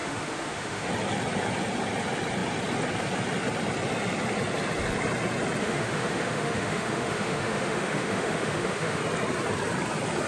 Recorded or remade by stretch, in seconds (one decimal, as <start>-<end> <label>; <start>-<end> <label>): 0.0-0.9 remade; 0.9-5.6 recorded; 5.6-9.0 remade; 9.0-10.3 recorded

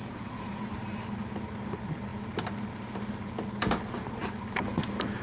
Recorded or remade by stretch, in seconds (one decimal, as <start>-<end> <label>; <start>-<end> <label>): 0.0-0.7 remade; 0.7-5.2 recorded

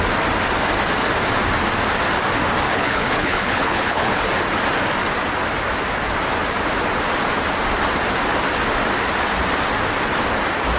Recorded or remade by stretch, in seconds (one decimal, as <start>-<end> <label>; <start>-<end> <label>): 0.0-2.7 recorded; 2.7-4.2 remade; 4.2-10.8 recorded

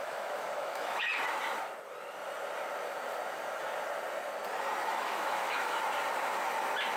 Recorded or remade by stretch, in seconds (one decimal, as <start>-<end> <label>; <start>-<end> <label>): 0.0-1.1 remade; 1.1-4.9 recorded; 4.9-5.8 remade; 5.8-7.0 recorded

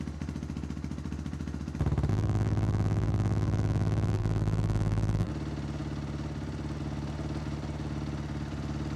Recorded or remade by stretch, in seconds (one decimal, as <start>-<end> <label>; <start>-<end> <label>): 0.0-2.1 recorded; 2.1-5.3 remade; 5.3-9.0 recorded

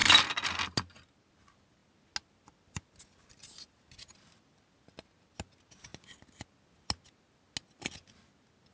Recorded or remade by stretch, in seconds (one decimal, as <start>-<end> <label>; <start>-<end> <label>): 0.0-8.7 recorded

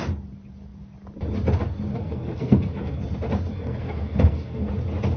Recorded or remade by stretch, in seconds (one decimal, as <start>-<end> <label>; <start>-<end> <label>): 0.0-1.9 recorded; 1.9-3.0 remade; 3.0-3.5 recorded; 3.5-4.7 remade; 4.7-5.2 recorded